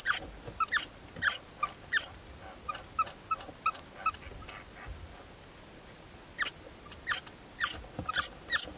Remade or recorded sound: recorded